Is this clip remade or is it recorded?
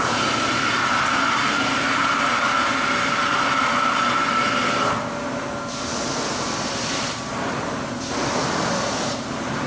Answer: recorded